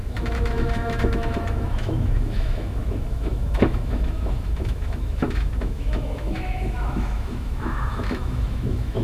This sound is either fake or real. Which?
fake